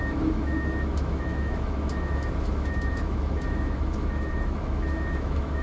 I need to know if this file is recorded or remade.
remade